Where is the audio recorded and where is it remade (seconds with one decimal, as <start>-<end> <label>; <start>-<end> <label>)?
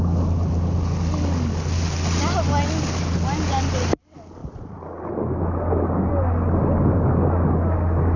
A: 0.0-8.2 recorded